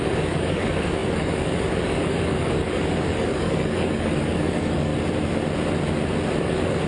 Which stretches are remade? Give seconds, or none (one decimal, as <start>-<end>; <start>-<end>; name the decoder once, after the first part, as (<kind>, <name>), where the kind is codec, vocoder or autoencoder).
0.0-4.9 (codec, DAC); 6.4-6.9